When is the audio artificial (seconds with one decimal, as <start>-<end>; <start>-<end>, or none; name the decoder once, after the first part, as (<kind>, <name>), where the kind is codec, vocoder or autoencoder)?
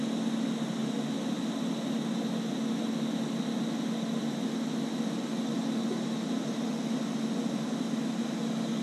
0.8-1.4 (vocoder, BigVGAN v2)